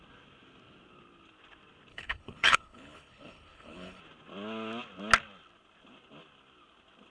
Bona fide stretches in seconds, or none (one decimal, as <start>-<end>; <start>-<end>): 0.0-1.9; 4.0-7.1